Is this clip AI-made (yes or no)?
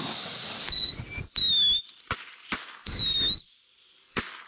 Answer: no